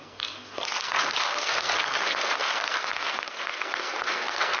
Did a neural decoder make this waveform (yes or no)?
yes